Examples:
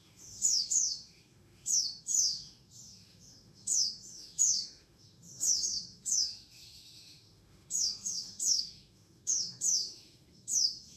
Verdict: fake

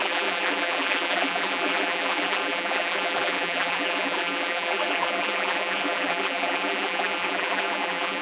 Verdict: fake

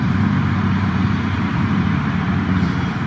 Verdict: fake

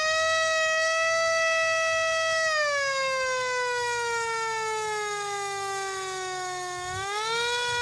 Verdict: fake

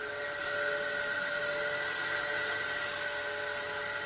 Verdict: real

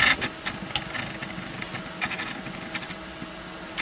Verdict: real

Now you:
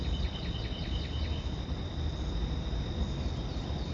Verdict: real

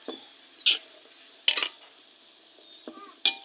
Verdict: real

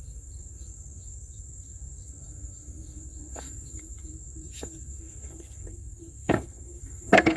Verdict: fake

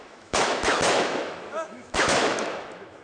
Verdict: fake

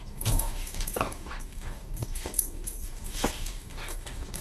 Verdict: fake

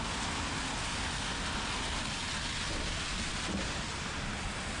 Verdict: real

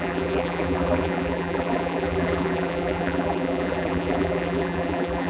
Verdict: fake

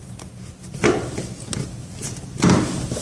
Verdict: real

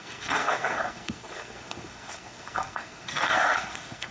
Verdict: fake